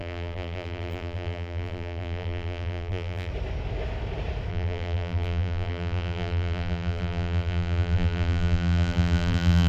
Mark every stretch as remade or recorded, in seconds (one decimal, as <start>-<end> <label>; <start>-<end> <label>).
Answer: 0.0-3.3 remade; 3.3-4.5 recorded; 4.5-9.7 remade

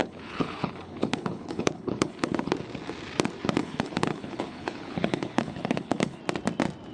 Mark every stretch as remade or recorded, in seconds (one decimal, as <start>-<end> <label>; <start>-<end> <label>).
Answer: 0.0-2.5 remade; 2.5-3.6 recorded; 3.6-6.2 remade; 6.2-6.9 recorded